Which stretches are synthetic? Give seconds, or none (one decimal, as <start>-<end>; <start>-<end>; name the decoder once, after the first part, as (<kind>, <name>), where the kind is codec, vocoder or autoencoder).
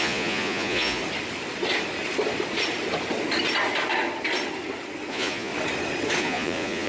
0.0-1.0 (vocoder, Vocos); 5.1-5.5; 6.2-6.9